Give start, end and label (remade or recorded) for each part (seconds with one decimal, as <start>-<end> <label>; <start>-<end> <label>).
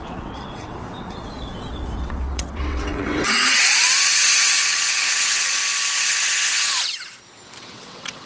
0.0-5.6 remade; 5.6-7.6 recorded; 7.6-8.3 remade